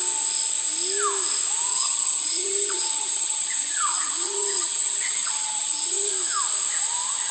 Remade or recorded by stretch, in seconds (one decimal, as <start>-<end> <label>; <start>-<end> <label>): 0.0-1.7 recorded; 1.7-6.1 remade; 6.1-7.3 recorded